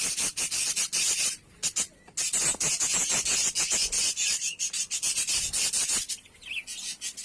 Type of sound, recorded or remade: recorded